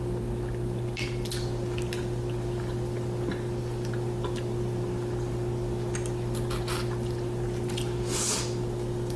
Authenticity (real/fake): real